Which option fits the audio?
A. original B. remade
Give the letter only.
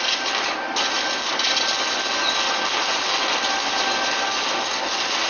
A